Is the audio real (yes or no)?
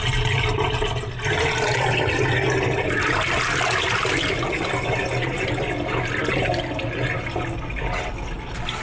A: yes